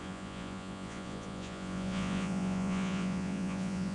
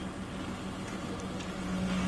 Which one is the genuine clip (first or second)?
second